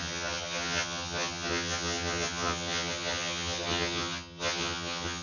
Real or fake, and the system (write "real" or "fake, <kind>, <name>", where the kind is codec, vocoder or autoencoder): fake, vocoder, HiFi-GAN